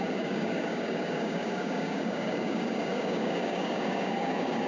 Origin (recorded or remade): remade